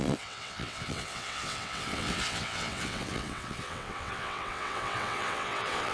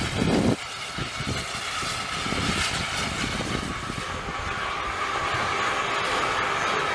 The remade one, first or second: first